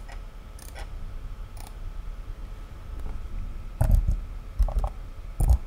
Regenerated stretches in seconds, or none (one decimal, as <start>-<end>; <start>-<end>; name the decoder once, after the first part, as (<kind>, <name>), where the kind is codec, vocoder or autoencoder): none